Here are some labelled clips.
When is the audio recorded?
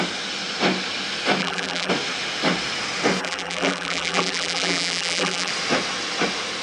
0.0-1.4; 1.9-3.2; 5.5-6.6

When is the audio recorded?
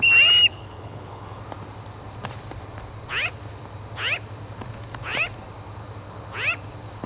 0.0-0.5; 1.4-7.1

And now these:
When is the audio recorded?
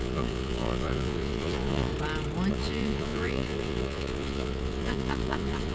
1.9-2.5